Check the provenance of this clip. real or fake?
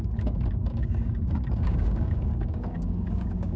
fake